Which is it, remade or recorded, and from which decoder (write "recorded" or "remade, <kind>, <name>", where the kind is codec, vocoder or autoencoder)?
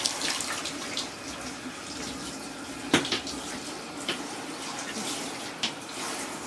remade, vocoder, BigVGAN v2